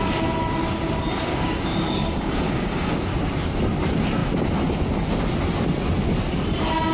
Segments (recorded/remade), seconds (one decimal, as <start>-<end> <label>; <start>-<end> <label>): 0.0-1.3 recorded; 1.3-2.9 remade; 2.9-6.9 recorded